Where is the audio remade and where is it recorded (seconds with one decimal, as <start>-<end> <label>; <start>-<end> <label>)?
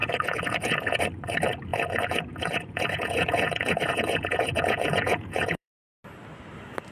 0.0-1.0 remade; 1.0-1.7 recorded; 1.7-5.7 remade; 5.7-6.9 recorded